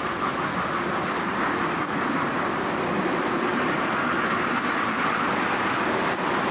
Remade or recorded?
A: recorded